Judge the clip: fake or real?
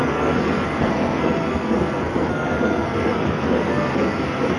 fake